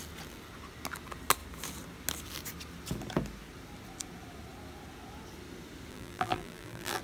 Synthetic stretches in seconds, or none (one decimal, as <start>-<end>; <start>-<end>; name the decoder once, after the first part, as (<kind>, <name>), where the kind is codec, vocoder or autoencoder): 5.9-7.0 (vocoder, BigVGAN v2)